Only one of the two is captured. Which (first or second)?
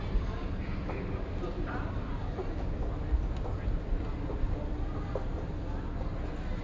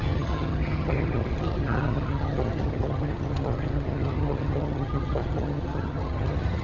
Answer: first